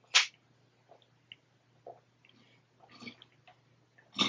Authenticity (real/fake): real